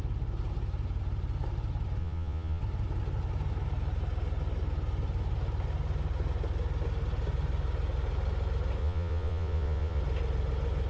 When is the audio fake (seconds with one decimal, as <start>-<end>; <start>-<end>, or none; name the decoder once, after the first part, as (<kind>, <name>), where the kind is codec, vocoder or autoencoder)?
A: 2.0-2.6 (vocoder, Vocos); 8.8-10.0